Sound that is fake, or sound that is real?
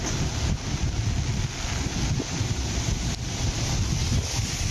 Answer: real